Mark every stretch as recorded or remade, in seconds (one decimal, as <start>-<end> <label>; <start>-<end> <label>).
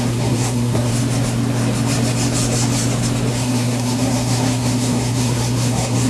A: 0.0-0.9 remade; 0.9-3.3 recorded; 3.3-6.1 remade